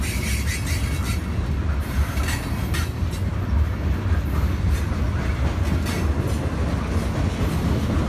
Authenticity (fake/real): real